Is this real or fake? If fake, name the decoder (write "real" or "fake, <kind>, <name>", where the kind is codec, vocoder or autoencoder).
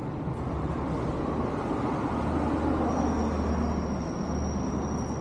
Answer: real